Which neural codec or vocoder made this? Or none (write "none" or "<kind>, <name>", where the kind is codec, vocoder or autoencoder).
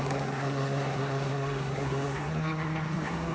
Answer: codec, SNAC